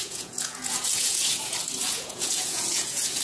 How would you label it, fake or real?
fake